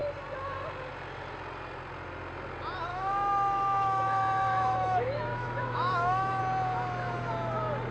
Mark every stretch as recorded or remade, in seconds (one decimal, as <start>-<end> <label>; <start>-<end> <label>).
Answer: 0.0-2.9 recorded; 2.9-6.4 remade; 6.4-7.9 recorded